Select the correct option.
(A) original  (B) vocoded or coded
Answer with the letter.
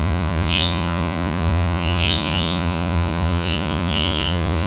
B